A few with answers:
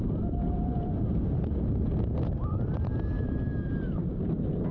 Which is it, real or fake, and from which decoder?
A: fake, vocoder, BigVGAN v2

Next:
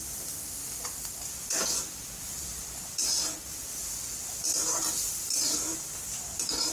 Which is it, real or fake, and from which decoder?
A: real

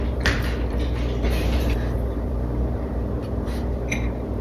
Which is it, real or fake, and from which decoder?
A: fake, vocoder, BigVGAN v2